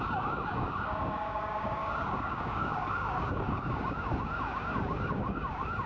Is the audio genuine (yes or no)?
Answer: no